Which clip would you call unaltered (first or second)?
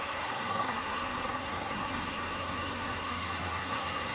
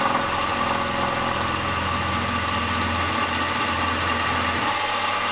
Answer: second